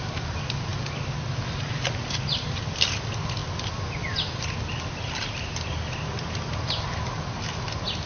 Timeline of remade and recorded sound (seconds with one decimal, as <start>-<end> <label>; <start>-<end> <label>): 0.0-8.1 recorded